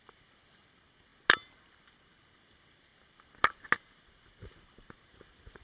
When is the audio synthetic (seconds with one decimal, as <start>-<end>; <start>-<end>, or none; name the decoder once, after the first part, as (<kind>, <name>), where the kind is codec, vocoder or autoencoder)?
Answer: none